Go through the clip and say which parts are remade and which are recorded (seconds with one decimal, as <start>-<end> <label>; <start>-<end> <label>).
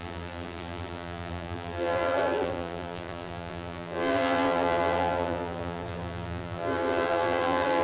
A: 0.0-7.8 remade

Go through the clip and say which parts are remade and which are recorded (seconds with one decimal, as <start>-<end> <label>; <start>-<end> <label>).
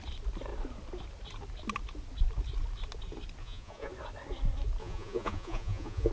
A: 0.0-3.4 recorded; 3.4-3.9 remade; 3.9-4.8 recorded; 4.8-6.1 remade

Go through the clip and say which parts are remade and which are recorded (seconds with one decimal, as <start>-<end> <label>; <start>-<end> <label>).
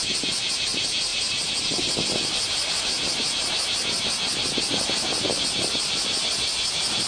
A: 0.0-7.1 recorded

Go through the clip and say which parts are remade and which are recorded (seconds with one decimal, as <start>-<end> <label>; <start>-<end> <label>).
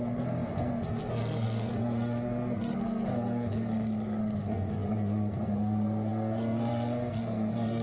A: 0.0-7.8 remade